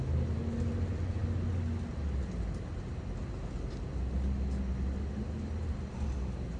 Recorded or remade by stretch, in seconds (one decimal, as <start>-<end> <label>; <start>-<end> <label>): 0.0-6.6 recorded